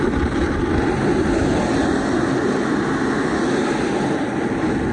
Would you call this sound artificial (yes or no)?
no